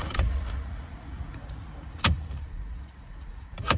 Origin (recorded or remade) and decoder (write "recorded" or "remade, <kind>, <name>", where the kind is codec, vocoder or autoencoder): remade, vocoder, Vocos